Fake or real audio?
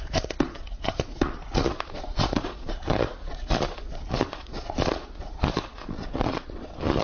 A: fake